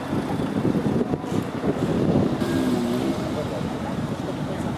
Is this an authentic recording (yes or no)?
yes